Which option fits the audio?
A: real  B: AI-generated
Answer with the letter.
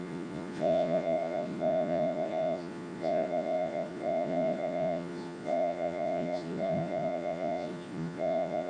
B